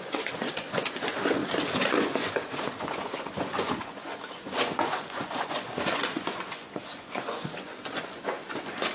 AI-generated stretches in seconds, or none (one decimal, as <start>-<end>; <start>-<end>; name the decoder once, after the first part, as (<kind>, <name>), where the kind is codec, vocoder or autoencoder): 0.0-1.4 (vocoder, Vocos); 1.9-8.9

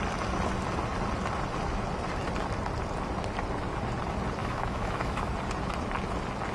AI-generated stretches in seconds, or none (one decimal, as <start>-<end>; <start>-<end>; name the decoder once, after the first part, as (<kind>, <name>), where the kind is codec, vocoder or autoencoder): 4.4-5.3 (autoencoder, DAC-VAE)

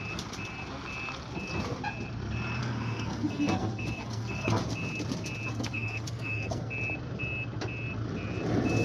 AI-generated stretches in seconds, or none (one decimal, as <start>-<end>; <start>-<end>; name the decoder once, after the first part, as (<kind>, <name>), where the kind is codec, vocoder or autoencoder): 2.6-4.6 (codec, SNAC); 5.5-6.7